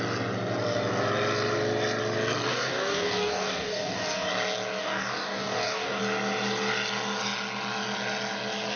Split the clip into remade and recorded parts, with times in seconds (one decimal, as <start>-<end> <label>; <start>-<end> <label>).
0.0-2.5 recorded; 2.5-4.3 remade; 4.3-4.8 recorded; 4.8-6.0 remade; 6.0-8.8 recorded

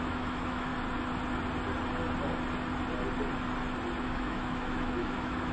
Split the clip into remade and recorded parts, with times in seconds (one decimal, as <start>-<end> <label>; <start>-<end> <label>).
0.0-0.7 remade; 0.7-4.0 recorded; 4.0-5.5 remade

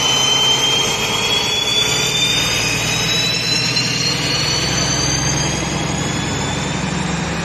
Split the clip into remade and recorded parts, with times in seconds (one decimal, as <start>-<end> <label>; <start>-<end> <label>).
0.0-7.4 recorded

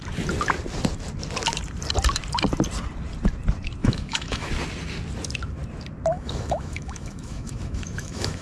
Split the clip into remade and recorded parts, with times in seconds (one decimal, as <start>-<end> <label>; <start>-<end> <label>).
0.0-3.8 recorded; 3.8-4.5 remade; 4.5-6.1 recorded; 6.1-8.4 remade

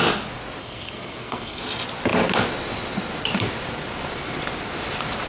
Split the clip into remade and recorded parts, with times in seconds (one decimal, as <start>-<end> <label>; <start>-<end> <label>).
0.0-0.6 recorded; 0.6-1.6 remade; 1.6-5.3 recorded

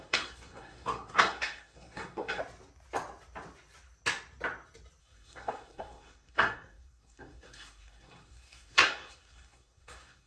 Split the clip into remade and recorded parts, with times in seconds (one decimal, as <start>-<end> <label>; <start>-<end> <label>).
0.0-2.4 remade; 2.4-5.0 recorded; 5.0-10.3 remade

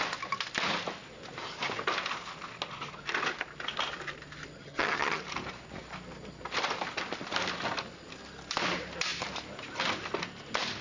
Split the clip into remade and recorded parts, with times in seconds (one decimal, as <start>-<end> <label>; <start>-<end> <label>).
0.0-4.6 recorded; 4.6-5.2 remade; 5.2-10.8 recorded